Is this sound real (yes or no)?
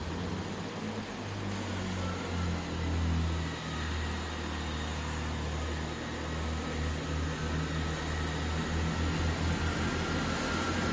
yes